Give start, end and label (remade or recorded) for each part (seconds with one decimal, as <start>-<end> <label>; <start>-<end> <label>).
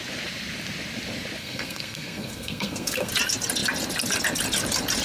0.0-1.4 recorded; 1.4-3.1 remade; 3.1-5.0 recorded